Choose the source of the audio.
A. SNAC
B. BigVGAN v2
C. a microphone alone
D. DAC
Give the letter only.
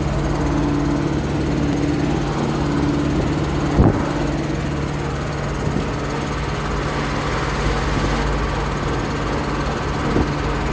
C